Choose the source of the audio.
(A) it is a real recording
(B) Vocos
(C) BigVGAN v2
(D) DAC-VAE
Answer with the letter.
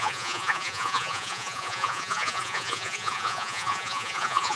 B